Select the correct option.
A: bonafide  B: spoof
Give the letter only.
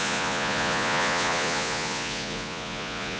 B